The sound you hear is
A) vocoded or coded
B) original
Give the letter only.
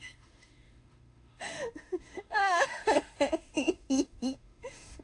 A